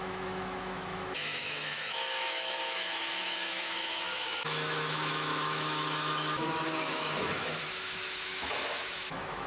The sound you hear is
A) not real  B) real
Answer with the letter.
A